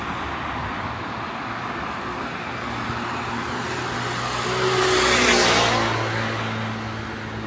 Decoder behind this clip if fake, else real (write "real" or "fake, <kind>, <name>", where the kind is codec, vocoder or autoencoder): real